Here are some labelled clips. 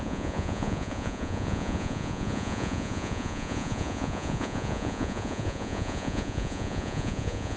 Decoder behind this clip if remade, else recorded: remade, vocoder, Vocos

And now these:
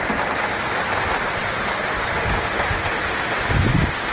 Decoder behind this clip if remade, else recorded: recorded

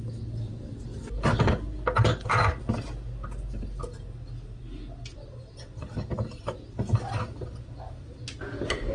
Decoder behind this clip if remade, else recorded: recorded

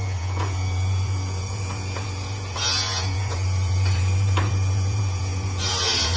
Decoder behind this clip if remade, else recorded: remade, vocoder, Vocos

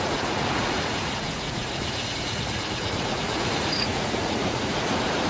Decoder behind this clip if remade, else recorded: remade, vocoder, Vocos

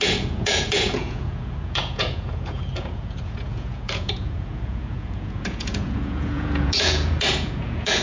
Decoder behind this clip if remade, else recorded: remade, vocoder, Vocos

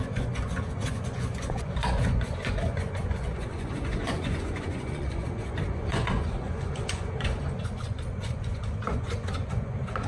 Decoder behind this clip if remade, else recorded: remade, vocoder, Vocos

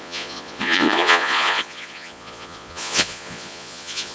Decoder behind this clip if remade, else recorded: remade, vocoder, Vocos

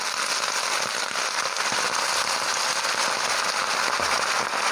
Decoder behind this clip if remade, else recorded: recorded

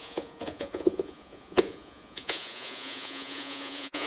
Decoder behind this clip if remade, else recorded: remade, vocoder, Vocos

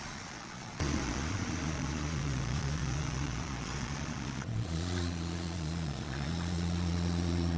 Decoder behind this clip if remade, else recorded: remade, vocoder, Vocos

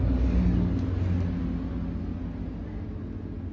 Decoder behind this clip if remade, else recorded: recorded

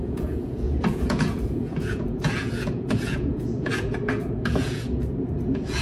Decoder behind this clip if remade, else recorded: remade, vocoder, Vocos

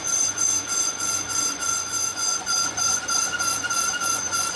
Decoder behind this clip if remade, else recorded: remade, vocoder, Vocos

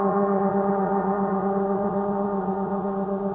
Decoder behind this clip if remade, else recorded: remade, vocoder, Vocos